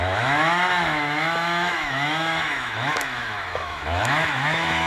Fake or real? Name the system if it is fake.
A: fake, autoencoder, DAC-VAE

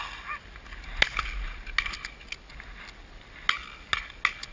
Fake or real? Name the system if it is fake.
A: real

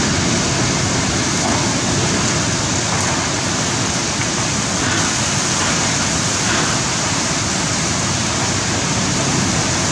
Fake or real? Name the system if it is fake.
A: real